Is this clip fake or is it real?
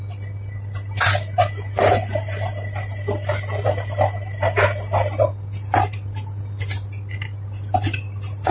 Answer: real